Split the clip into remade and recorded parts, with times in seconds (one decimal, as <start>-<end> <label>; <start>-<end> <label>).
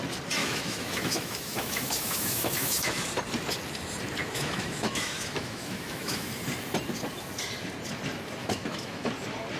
0.0-0.4 recorded; 0.4-3.1 remade; 3.1-4.2 recorded; 4.2-6.3 remade; 6.3-8.4 recorded; 8.4-9.1 remade; 9.1-9.6 recorded